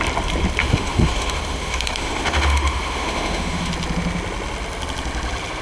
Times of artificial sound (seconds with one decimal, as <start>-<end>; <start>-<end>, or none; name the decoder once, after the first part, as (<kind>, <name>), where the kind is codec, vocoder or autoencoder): 0.6-3.7 (autoencoder, DAC-VAE)